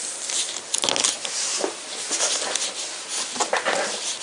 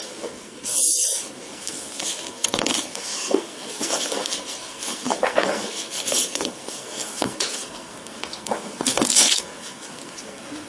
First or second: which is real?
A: first